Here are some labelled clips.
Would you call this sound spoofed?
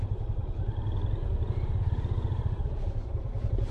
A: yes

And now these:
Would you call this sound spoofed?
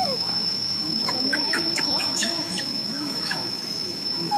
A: yes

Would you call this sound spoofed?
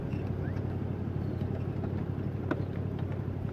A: no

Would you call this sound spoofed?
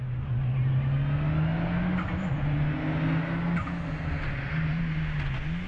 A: no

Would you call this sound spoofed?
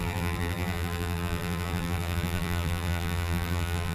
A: yes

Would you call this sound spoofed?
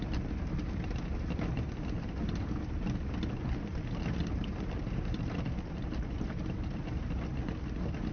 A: no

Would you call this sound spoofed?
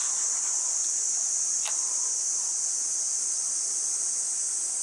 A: no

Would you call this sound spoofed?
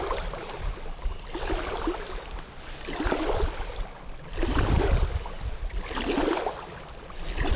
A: no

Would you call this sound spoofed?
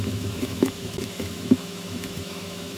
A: yes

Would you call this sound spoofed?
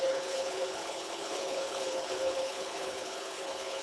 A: yes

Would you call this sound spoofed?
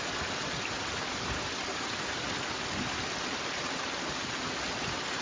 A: no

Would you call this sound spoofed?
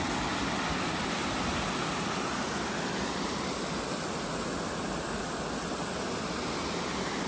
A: no